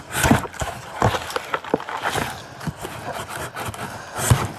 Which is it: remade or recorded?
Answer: recorded